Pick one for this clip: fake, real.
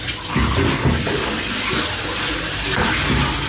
real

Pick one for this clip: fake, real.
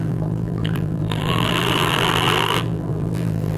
fake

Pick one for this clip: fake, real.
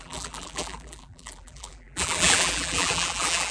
fake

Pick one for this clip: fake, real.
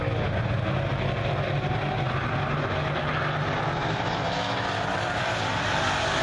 real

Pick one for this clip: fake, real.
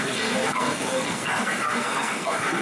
fake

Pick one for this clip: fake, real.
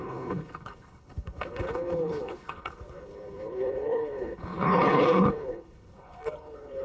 fake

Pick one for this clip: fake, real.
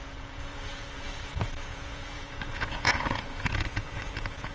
fake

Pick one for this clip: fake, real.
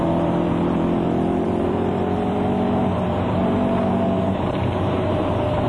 fake